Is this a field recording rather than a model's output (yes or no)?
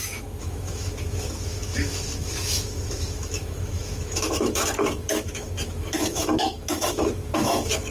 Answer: no